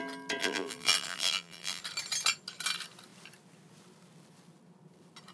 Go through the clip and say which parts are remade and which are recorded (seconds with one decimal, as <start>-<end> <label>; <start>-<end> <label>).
0.0-0.4 recorded; 0.4-1.8 remade; 1.8-5.3 recorded

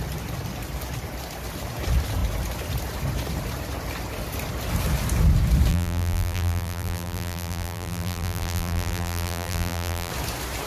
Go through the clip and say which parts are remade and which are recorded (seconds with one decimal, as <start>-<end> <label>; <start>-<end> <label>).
0.0-5.7 recorded; 5.7-10.1 remade; 10.1-10.7 recorded

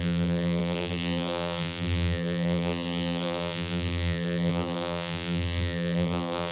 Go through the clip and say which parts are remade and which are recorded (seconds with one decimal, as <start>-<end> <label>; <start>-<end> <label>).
0.0-6.5 remade

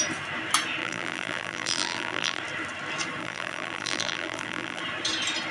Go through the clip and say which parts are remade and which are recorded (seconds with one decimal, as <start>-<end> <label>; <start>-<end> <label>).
0.0-0.8 recorded; 0.8-2.4 remade; 2.4-3.2 recorded; 3.2-4.8 remade; 4.8-5.5 recorded